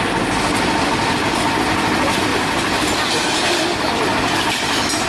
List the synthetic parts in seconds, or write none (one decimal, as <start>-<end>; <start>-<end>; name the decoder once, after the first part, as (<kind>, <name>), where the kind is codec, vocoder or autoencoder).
none